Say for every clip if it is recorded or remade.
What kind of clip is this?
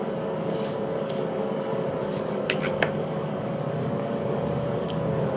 remade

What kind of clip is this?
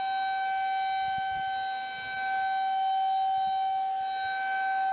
recorded